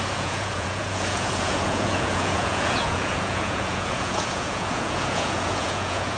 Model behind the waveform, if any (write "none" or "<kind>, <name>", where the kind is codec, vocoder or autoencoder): vocoder, Vocos